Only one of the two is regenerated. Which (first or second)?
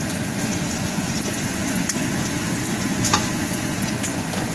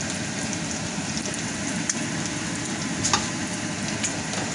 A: first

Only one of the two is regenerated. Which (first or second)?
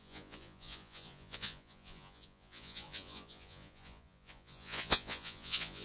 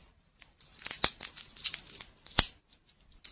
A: first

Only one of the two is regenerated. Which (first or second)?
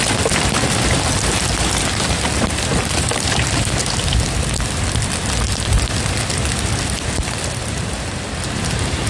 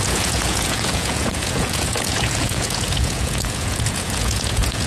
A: second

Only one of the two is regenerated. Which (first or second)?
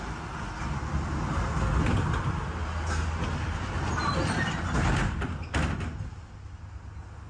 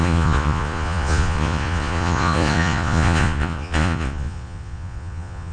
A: second